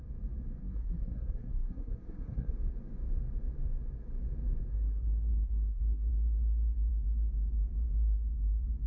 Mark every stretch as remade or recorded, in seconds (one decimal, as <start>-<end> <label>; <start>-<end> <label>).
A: 0.0-0.6 recorded; 0.6-2.5 remade; 2.5-4.7 recorded; 4.7-6.1 remade; 6.1-8.9 recorded